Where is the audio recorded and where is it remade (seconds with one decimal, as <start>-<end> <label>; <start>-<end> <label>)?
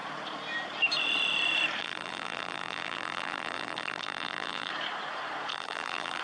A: 0.0-1.8 recorded; 1.8-4.7 remade; 4.7-5.5 recorded; 5.5-6.2 remade